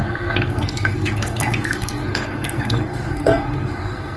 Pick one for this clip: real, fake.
fake